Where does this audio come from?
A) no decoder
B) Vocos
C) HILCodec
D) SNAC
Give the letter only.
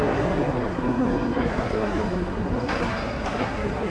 D